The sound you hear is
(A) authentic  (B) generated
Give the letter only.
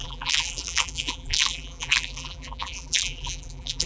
B